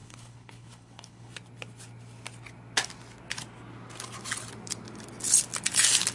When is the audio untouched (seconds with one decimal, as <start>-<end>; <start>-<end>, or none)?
1.3-6.1